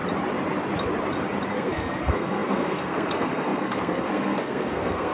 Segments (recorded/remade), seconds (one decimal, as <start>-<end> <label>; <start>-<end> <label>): 0.0-1.5 recorded; 1.5-5.1 remade